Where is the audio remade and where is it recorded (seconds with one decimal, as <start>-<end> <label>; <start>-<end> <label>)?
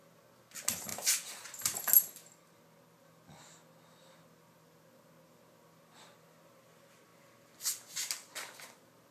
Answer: 0.0-9.1 recorded